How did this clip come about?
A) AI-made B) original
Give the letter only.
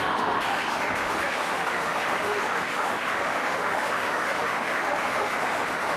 A